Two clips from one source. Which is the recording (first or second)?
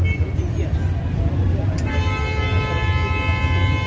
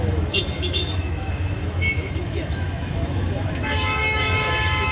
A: first